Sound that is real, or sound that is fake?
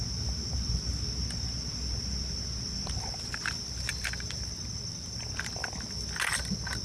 real